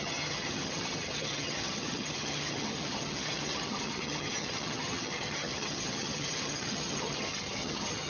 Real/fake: fake